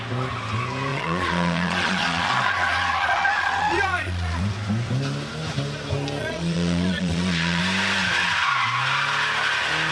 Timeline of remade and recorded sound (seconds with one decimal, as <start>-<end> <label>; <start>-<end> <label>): 0.0-0.9 recorded; 0.9-4.4 remade; 4.4-6.2 recorded; 6.2-7.6 remade; 7.6-9.9 recorded